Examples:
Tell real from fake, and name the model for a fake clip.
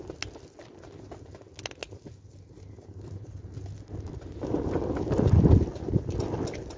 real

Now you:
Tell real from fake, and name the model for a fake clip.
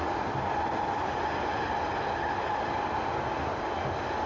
real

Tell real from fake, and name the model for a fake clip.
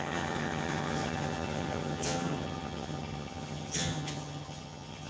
fake, vocoder, HiFi-GAN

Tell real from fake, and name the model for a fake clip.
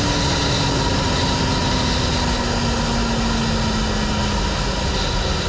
real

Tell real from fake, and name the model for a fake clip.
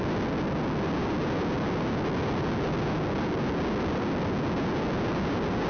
real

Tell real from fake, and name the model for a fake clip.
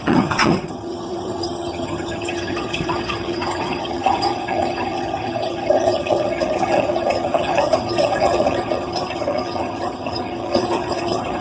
fake, vocoder, HiFi-GAN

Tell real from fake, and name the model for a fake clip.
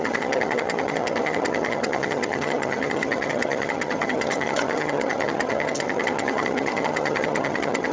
fake, vocoder, HiFi-GAN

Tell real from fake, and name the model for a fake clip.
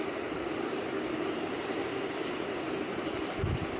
real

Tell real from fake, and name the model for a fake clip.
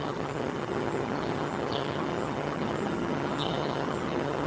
fake, vocoder, HiFi-GAN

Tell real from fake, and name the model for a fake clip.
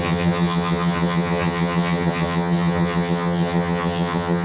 fake, vocoder, HiFi-GAN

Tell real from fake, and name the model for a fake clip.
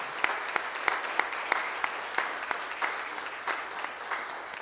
real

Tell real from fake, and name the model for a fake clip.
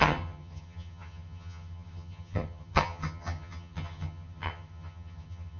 fake, vocoder, HiFi-GAN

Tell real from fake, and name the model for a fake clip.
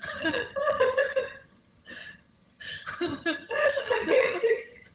fake, vocoder, HiFi-GAN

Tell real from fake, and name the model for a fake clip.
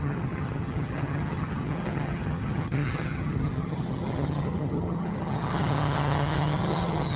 fake, vocoder, HiFi-GAN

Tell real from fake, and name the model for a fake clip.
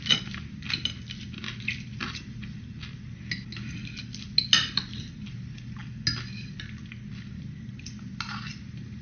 real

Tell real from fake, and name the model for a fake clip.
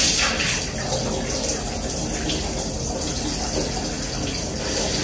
real